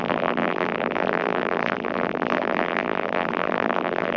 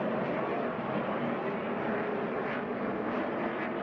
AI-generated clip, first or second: first